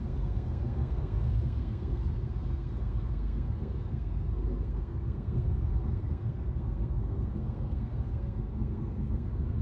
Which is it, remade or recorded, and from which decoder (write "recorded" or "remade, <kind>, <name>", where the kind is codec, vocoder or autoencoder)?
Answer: remade, codec, SNAC